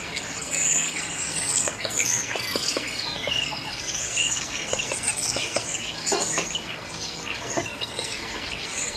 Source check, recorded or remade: remade